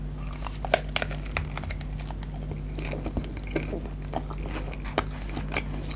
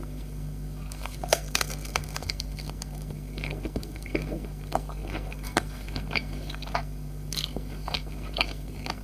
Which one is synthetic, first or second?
second